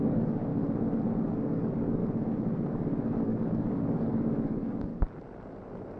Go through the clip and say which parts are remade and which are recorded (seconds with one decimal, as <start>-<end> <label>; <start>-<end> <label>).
0.0-0.5 remade; 0.5-1.3 recorded; 1.3-2.0 remade; 2.0-2.7 recorded; 2.7-4.9 remade; 4.9-6.0 recorded